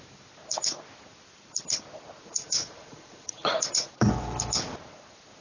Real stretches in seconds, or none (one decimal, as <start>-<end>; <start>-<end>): 0.0-2.2; 3.9-5.4